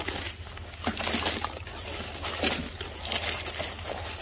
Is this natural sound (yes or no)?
yes